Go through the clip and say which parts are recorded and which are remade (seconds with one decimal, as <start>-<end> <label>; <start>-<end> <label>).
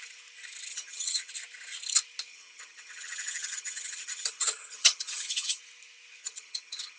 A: 0.0-0.7 recorded; 0.7-1.3 remade; 1.3-2.3 recorded; 2.3-5.6 remade; 5.6-6.2 recorded; 6.2-7.0 remade